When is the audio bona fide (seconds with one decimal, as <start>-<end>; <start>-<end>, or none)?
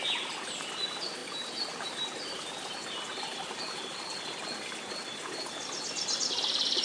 0.0-6.8